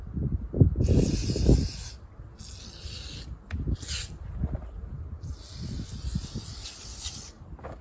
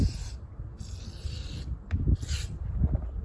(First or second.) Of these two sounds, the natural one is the first